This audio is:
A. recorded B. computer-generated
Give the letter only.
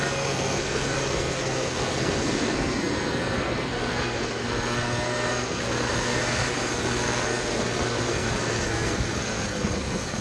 B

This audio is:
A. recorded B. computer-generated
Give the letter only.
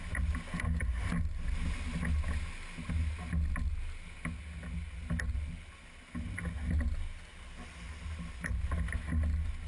A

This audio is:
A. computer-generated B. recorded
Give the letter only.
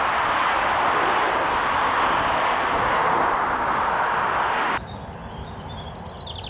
B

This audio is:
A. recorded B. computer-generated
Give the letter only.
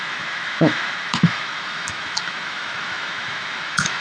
B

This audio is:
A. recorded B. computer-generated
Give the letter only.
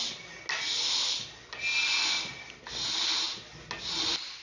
A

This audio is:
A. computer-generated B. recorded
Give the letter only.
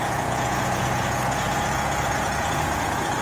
A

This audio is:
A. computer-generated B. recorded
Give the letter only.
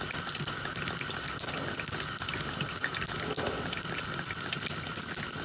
B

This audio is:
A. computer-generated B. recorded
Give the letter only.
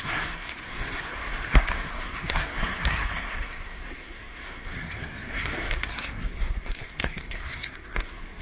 A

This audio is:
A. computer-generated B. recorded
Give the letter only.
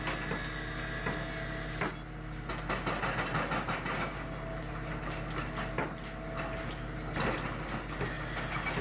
B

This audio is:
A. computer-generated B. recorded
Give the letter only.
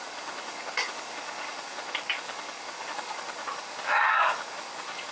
A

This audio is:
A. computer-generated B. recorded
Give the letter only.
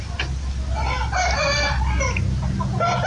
B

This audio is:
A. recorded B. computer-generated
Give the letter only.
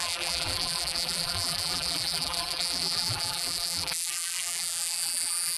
B